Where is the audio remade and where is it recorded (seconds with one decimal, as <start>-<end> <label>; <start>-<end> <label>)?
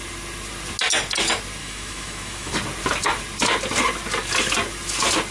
0.0-1.6 recorded; 1.6-2.5 remade; 2.5-5.3 recorded